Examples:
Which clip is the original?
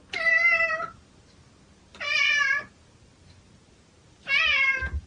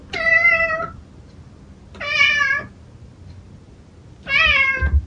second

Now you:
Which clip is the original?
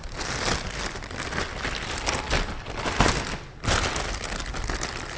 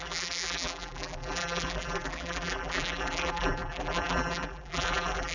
first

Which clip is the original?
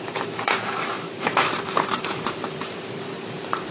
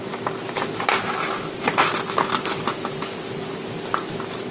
second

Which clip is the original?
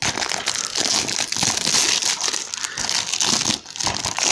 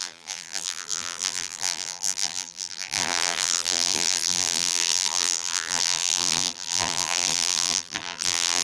first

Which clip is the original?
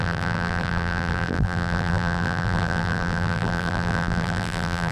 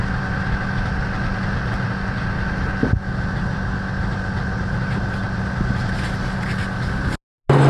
second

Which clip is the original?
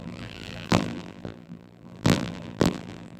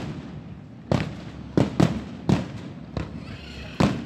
second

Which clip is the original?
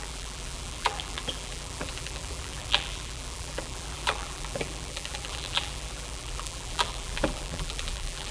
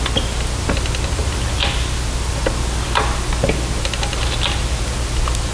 second